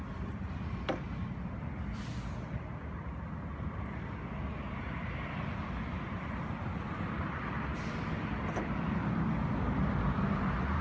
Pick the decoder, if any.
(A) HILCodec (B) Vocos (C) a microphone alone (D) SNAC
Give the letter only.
C